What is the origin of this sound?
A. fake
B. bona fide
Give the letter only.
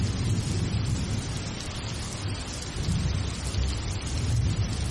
B